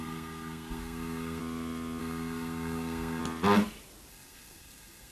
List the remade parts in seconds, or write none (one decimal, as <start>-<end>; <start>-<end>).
0.0-1.4; 2.0-3.2; 4.1-5.1